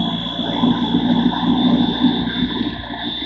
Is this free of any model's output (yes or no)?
yes